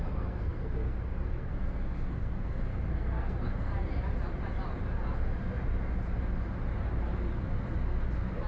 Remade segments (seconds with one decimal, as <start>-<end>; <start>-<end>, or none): 0.0-3.7